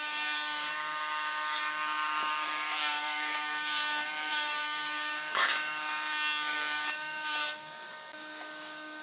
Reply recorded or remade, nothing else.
remade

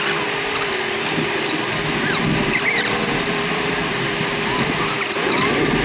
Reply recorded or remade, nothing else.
remade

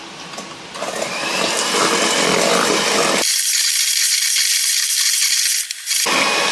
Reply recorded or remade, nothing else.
remade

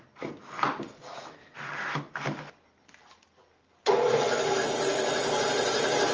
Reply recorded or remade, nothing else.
recorded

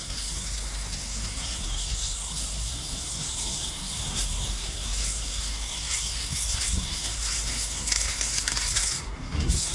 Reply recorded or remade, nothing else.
remade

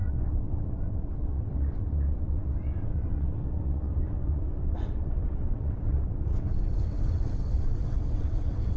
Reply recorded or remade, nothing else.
remade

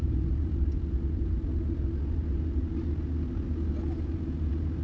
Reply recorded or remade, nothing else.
recorded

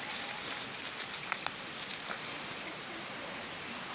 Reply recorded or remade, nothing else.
recorded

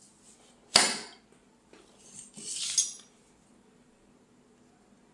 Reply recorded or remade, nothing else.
recorded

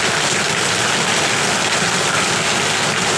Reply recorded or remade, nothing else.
recorded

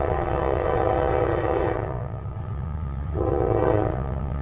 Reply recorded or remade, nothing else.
remade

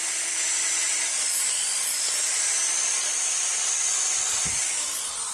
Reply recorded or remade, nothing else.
recorded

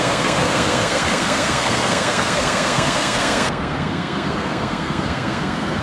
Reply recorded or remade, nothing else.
remade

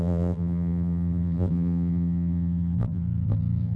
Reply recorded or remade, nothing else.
remade